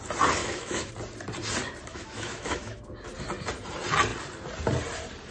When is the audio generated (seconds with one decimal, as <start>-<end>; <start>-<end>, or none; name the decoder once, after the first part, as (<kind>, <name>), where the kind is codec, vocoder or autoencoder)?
0.4-0.9 (autoencoder, DAC-VAE); 1.9-2.8